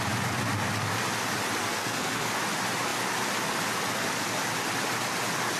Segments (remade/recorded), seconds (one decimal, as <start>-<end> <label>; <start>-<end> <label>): 0.0-1.6 recorded; 1.6-2.3 remade; 2.3-5.6 recorded